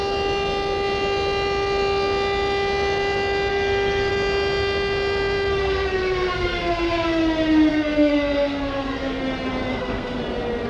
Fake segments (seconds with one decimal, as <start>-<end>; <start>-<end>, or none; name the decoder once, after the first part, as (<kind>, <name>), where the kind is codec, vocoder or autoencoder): 3.5-4.1 (codec, SNAC); 5.6-7.2; 7.7-9.2; 9.7-10.2